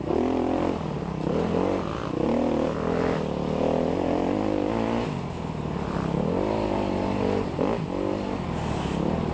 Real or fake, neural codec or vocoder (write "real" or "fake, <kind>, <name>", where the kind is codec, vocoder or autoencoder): real